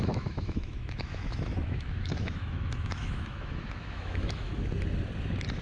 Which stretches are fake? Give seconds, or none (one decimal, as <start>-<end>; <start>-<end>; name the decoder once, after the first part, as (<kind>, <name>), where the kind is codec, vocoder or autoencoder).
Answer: 0.0-4.5 (autoencoder, DAC-VAE)